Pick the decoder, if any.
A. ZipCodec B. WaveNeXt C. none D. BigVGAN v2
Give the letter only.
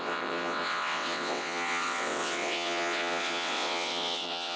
B